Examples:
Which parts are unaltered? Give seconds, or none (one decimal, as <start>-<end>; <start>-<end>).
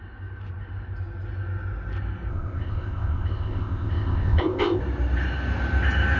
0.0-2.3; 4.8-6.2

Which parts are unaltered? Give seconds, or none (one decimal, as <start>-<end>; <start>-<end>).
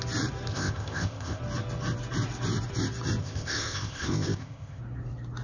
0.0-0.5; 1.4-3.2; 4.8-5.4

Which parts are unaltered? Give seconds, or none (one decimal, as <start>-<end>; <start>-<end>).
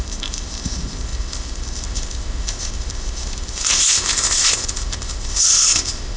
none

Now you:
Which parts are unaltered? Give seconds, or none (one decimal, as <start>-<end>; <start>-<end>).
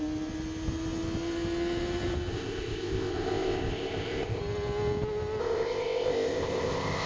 0.0-2.3; 4.4-5.4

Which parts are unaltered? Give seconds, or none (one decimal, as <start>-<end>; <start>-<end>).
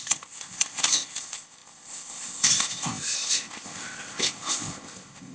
none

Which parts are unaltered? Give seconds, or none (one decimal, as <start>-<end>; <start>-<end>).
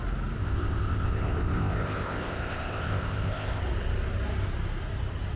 0.0-0.4; 3.6-5.4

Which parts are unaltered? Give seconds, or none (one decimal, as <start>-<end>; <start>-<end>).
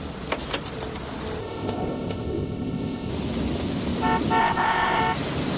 0.0-1.4; 3.1-4.4; 5.0-5.6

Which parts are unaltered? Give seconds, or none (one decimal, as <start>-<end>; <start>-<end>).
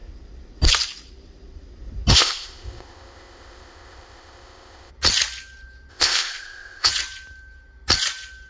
0.0-2.1; 4.9-5.9; 6.9-8.5